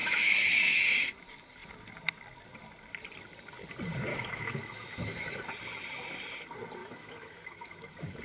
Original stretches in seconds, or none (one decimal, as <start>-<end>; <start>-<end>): 0.8-4.1; 5.4-6.8